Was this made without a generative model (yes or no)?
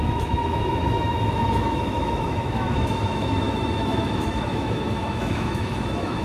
no